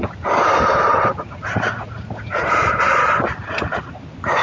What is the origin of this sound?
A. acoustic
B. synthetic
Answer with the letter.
A